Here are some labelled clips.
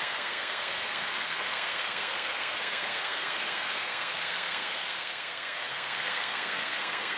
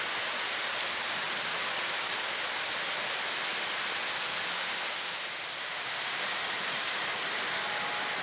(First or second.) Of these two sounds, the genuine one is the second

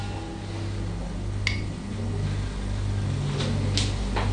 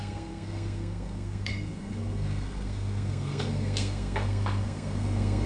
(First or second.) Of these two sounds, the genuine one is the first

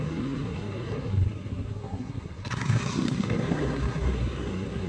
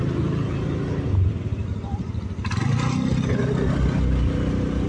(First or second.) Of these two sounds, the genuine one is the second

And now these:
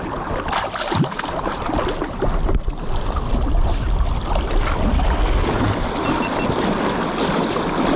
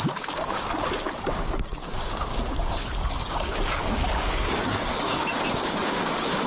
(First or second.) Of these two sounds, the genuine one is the first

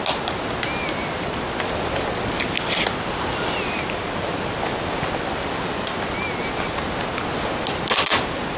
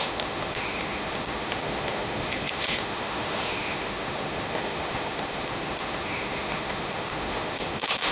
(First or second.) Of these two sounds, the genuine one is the first